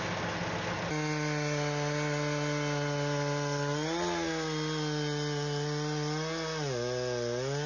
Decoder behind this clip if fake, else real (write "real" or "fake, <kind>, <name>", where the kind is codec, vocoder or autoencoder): real